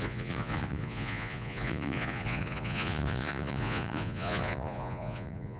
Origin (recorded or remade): remade